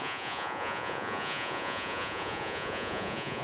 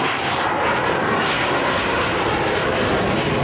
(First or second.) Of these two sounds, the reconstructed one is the first